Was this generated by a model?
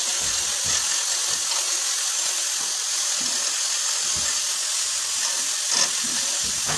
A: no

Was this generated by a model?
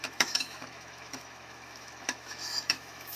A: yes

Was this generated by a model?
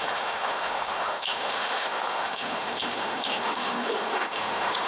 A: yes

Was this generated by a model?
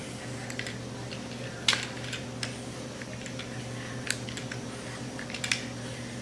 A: no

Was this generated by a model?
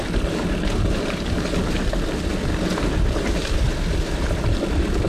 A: no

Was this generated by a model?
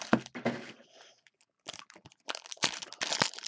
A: no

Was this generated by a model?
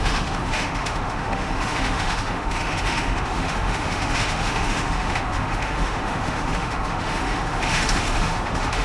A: yes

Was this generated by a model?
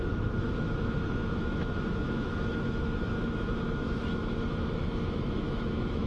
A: yes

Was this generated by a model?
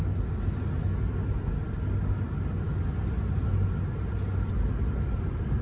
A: no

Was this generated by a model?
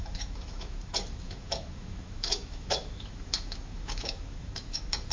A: yes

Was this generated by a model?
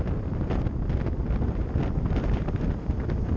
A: no